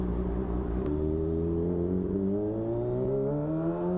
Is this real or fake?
real